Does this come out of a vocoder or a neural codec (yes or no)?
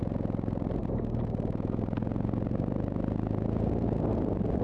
no